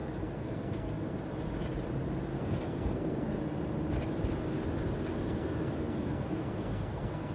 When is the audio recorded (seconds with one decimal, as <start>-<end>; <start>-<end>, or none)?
1.2-2.3; 3.4-5.1

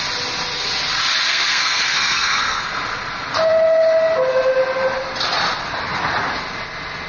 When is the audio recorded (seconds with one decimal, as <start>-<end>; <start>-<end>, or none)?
0.0-1.3; 2.6-7.1